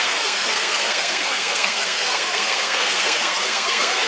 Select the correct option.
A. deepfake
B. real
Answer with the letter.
A